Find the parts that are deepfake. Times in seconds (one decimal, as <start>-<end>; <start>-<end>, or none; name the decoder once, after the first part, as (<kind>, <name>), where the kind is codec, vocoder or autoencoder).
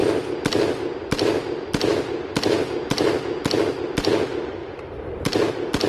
4.6-5.5 (vocoder, BigVGAN v2)